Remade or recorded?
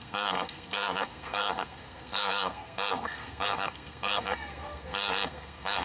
remade